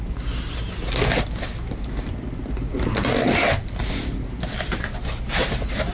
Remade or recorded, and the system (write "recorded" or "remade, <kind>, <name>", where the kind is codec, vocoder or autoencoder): recorded